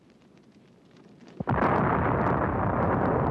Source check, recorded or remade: recorded